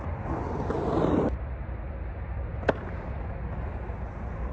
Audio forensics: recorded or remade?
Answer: recorded